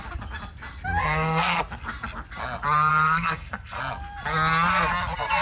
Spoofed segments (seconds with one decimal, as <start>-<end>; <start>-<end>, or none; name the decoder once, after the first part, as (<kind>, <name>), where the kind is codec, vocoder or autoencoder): 1.0-1.6 (codec, SNAC); 2.9-3.8